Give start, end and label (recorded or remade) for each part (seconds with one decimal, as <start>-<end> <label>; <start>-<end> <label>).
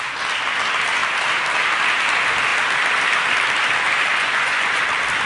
0.0-4.1 recorded; 4.1-4.8 remade; 4.8-5.3 recorded